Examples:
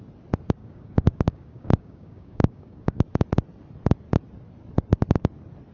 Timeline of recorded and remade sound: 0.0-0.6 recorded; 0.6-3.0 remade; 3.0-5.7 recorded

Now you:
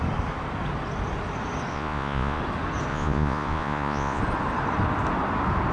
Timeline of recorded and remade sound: 0.0-1.7 recorded; 1.7-2.4 remade; 2.4-2.9 recorded; 2.9-4.2 remade; 4.2-5.7 recorded

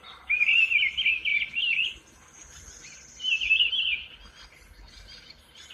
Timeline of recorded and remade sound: 0.0-5.7 recorded

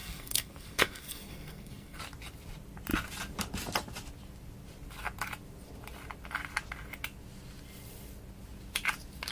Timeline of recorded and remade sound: 0.0-2.0 remade; 2.0-9.3 recorded